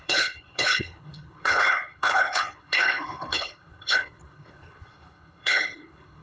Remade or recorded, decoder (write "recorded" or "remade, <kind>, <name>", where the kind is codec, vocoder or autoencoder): remade, codec, HILCodec